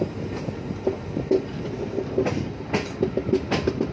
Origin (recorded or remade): recorded